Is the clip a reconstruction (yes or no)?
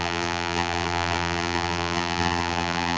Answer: yes